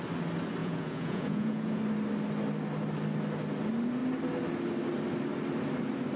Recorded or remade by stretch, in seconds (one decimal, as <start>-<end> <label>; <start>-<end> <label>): 0.0-0.6 recorded; 0.6-1.8 remade; 1.8-6.2 recorded